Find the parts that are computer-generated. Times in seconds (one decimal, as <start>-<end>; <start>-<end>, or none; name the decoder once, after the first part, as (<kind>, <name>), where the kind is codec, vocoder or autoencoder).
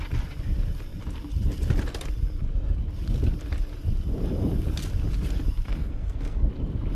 5.6-6.5 (codec, SNAC)